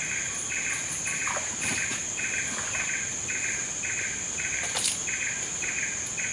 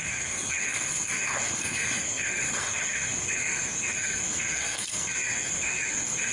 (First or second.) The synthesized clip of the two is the second